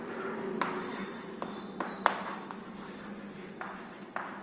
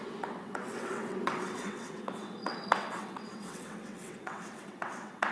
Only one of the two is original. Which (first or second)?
first